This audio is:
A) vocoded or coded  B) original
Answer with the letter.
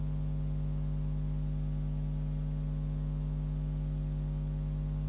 B